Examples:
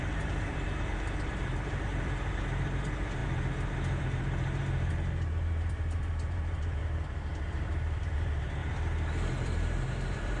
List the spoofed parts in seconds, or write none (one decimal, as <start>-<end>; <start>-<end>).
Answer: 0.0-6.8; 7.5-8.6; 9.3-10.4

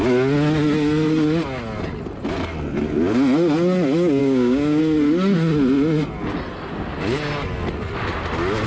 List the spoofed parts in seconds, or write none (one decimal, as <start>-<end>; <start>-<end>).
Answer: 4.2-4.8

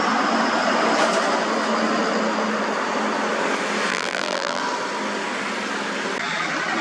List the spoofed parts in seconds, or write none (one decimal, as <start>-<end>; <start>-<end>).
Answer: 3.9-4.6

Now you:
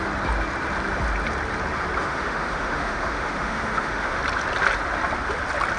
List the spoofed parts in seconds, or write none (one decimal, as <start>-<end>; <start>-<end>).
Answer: 2.0-4.2

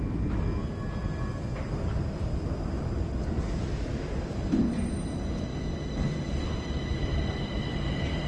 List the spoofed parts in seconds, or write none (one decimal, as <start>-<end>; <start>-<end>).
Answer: 7.1-7.9

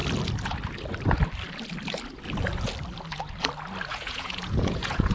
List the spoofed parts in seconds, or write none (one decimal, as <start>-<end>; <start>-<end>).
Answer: 3.9-5.1

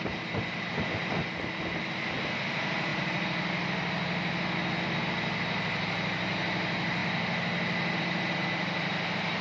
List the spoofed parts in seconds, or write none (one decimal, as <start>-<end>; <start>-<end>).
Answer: none